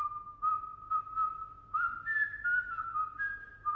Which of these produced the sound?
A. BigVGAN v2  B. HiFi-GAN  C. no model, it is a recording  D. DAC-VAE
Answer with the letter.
C